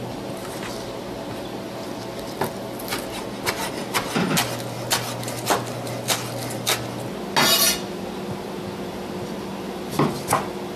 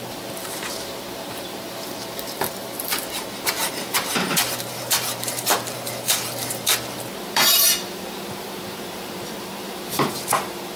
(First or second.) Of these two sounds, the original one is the first